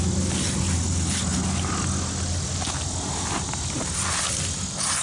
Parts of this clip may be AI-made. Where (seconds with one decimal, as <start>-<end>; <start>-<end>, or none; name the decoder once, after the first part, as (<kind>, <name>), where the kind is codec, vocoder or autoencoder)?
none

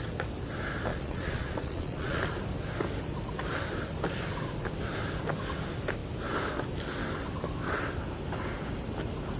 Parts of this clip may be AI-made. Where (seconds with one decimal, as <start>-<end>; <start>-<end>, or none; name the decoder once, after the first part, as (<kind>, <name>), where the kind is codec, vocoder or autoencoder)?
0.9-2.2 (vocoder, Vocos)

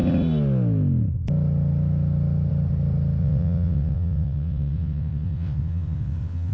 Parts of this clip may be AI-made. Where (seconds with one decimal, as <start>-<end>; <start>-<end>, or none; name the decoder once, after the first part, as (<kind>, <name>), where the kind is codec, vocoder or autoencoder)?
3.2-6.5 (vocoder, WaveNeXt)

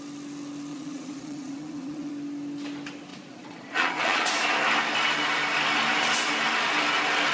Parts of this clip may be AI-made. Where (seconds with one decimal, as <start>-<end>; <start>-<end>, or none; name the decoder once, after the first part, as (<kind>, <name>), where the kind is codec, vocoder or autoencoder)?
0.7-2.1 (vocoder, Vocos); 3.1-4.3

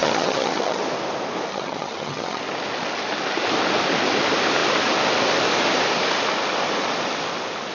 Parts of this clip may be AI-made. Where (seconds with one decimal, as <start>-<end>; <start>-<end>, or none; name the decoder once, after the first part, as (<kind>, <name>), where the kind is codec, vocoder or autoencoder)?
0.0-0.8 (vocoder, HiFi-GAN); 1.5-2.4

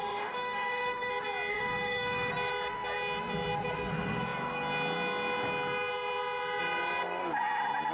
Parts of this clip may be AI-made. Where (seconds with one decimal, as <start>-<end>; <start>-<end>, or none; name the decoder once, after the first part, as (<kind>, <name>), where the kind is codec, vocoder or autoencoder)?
0.0-1.1 (autoencoder, DAC-VAE); 1.5-2.3